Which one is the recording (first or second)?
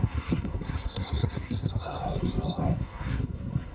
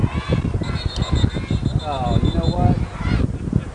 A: second